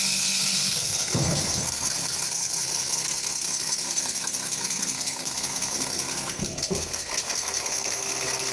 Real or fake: fake